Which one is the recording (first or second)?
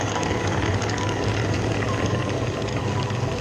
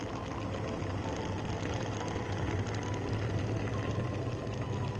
second